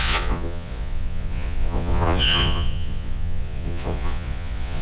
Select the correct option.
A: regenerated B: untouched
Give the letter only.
A